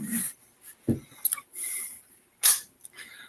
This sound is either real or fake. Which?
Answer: real